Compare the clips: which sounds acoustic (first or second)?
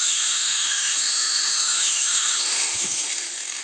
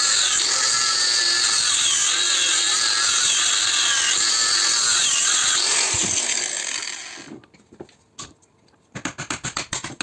second